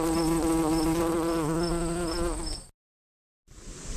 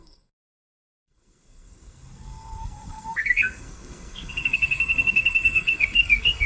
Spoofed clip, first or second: second